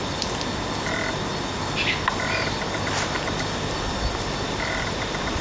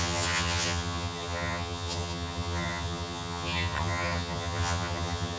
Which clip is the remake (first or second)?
second